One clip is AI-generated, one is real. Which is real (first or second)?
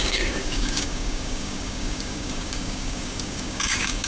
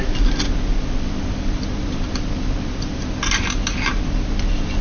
second